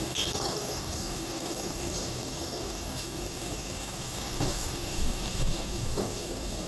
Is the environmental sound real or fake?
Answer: fake